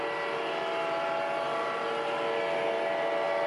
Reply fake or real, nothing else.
real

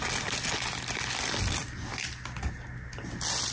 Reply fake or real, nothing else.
real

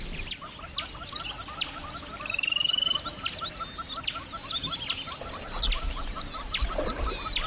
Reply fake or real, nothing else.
real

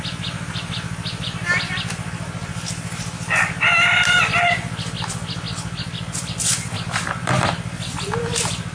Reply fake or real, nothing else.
real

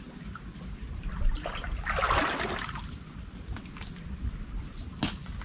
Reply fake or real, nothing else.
real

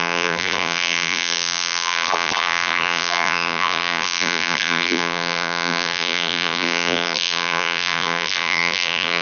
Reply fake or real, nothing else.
fake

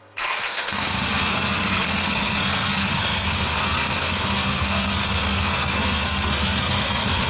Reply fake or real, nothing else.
fake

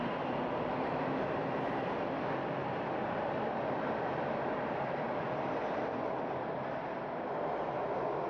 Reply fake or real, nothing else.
real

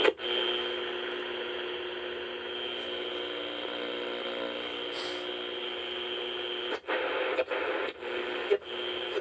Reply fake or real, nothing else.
real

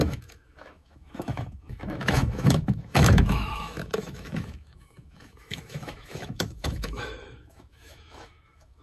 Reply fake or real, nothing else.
fake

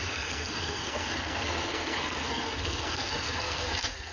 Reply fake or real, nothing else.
fake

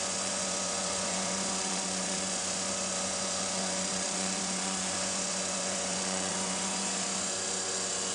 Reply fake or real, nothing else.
fake